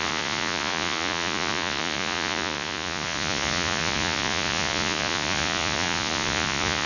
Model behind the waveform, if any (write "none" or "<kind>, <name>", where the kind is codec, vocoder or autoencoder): vocoder, Vocos